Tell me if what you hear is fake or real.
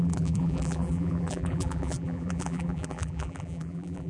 fake